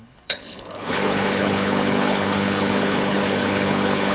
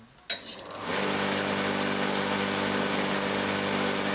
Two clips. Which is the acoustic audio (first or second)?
second